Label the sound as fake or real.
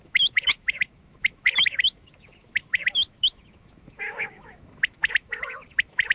fake